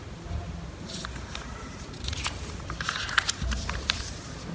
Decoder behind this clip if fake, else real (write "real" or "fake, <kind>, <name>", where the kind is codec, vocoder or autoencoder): real